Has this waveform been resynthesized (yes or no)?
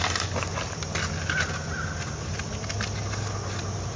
no